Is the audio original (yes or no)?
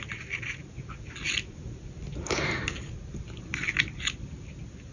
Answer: yes